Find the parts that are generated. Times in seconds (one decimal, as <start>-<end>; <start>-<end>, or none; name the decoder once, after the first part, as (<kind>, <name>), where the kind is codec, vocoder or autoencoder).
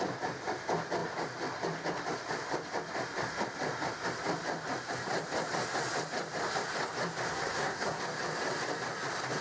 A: 7.3-8.0 (codec, SNAC)